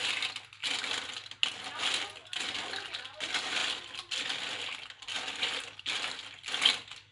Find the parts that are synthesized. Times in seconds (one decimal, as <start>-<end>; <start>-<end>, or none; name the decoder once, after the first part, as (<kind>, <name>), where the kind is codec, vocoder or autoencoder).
none